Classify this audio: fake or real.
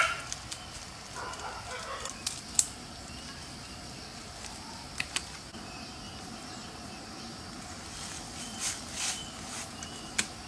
real